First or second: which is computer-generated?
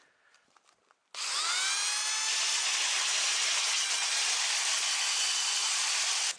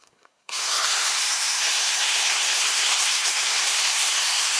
second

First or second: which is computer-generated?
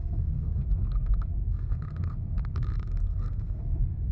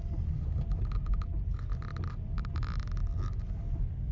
first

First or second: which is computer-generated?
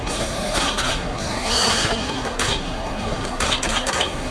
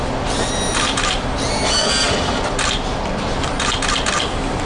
first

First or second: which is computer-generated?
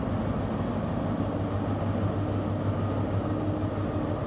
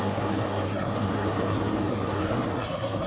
second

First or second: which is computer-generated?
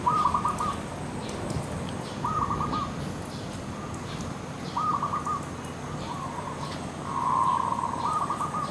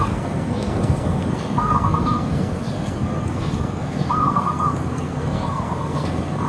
second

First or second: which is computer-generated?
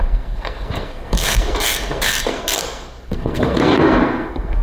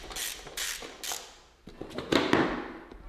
first